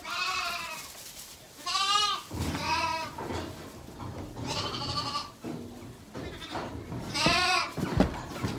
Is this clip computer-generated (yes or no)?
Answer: no